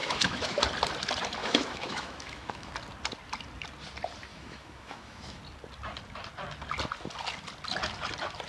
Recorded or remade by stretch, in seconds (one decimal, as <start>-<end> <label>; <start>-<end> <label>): 0.0-0.6 remade; 0.6-1.4 recorded; 1.4-2.7 remade; 2.7-4.3 recorded; 4.3-5.4 remade; 5.4-8.5 recorded